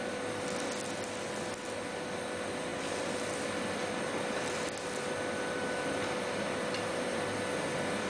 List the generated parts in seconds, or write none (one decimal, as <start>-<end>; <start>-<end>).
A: none